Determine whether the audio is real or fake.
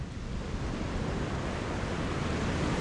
real